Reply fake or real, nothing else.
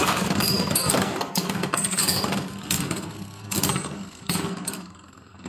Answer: fake